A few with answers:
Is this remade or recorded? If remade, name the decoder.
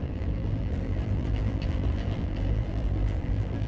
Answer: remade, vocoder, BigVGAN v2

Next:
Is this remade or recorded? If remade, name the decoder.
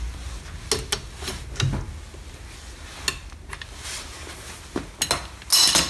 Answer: recorded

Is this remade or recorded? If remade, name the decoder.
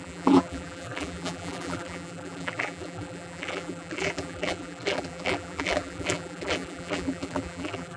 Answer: remade, vocoder, BigVGAN v2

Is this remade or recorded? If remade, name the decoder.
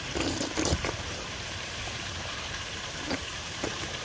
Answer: remade, vocoder, BigVGAN v2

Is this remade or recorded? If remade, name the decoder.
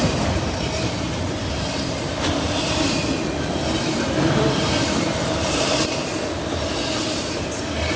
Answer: remade, vocoder, BigVGAN v2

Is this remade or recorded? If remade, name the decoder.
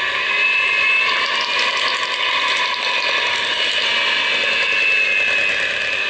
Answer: recorded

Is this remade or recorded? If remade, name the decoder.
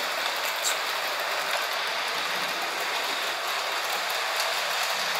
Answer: recorded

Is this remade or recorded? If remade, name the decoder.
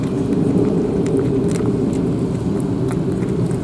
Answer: recorded